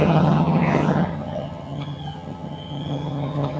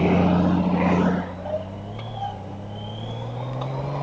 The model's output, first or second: first